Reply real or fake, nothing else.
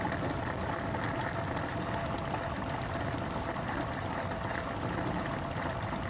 real